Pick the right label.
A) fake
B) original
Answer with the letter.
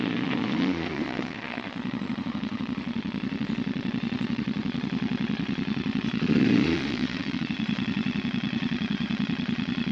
A